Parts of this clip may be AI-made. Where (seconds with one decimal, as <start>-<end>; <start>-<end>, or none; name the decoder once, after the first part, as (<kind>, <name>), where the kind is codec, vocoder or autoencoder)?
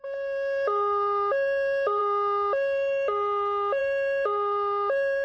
none